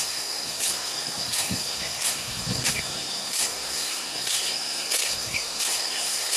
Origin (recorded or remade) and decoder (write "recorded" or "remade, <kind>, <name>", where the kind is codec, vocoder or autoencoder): remade, codec, SNAC